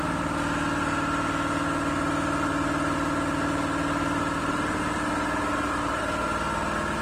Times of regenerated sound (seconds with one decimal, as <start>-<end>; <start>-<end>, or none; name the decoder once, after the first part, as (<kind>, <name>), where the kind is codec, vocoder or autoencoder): 4.4-6.0 (vocoder, BigVGAN v2)